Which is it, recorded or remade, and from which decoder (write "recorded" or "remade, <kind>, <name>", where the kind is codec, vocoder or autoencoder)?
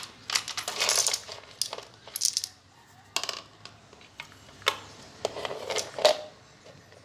recorded